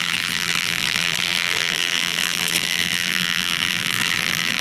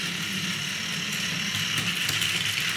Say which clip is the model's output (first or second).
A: first